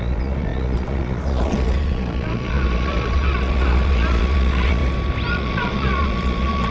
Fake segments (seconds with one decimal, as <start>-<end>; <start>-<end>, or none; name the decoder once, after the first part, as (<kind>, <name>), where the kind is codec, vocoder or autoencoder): 0.0-4.8 (vocoder, Vocos); 5.3-6.7